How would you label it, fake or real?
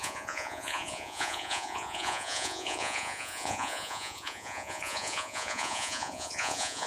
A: fake